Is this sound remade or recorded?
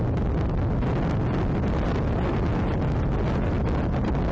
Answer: recorded